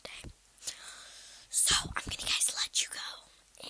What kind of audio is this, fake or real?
real